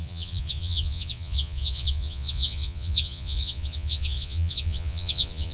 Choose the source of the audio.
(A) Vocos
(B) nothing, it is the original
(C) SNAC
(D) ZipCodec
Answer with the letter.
A